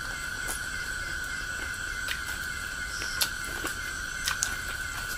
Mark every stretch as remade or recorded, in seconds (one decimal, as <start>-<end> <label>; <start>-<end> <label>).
0.0-5.2 recorded